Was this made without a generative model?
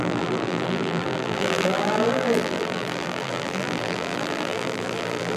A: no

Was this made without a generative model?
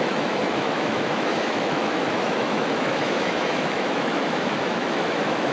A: no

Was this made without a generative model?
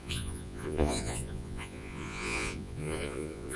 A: no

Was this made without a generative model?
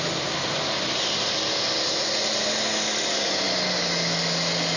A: yes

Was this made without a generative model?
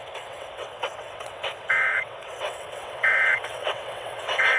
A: no